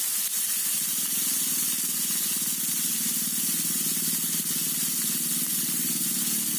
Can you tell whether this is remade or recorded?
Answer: recorded